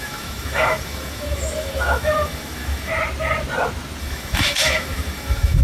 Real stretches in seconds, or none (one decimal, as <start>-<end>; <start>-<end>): 2.9-4.0